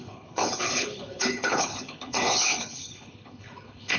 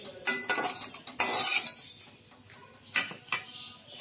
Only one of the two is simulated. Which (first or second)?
first